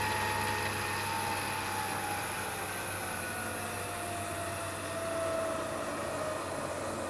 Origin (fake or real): real